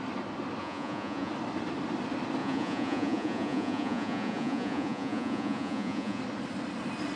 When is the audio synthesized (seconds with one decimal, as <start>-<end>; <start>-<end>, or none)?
0.6-1.3; 2.4-6.2